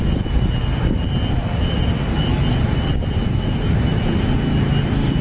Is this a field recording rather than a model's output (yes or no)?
yes